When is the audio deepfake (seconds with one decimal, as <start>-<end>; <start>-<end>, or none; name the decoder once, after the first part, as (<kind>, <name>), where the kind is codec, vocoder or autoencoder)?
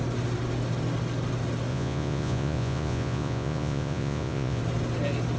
1.7-4.6 (vocoder, Vocos)